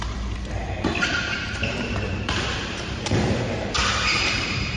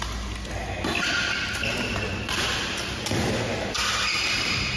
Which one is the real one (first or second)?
second